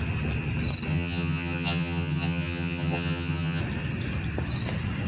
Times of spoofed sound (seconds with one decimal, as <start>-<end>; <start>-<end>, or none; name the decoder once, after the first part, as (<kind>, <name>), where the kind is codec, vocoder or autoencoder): 0.9-3.6 (vocoder, HiFi-GAN)